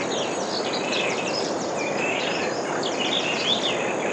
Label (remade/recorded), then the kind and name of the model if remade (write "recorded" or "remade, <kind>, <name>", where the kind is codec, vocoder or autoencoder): recorded